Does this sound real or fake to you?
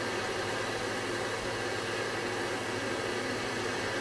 real